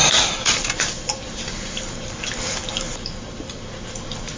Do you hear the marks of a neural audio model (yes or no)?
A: yes